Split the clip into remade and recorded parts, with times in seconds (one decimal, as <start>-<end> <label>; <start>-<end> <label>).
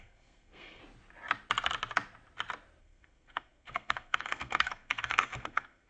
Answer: 0.0-0.8 remade; 0.8-2.8 recorded; 2.8-5.9 remade